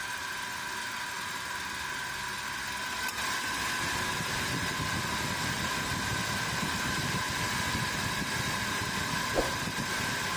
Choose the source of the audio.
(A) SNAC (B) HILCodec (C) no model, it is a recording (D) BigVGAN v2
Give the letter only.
C